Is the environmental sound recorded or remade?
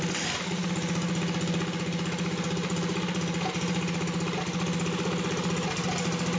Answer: recorded